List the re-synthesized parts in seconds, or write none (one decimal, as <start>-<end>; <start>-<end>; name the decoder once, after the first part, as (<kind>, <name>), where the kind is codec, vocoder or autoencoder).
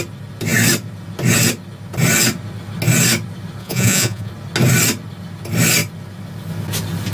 3.6-4.3 (vocoder, Vocos)